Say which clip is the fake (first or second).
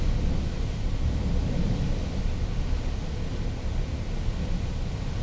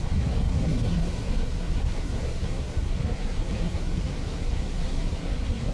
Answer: second